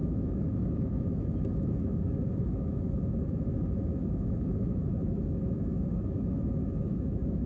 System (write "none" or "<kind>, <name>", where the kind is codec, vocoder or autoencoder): autoencoder, DAC-VAE